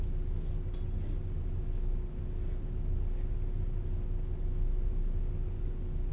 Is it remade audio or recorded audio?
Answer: recorded